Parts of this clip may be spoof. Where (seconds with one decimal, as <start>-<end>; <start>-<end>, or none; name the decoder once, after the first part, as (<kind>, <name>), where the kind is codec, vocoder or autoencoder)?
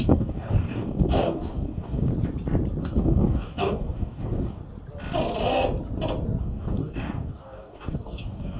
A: 0.0-2.1 (codec, DAC); 2.8-4.6; 6.4-8.6